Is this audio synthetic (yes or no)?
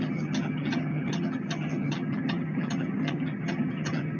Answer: yes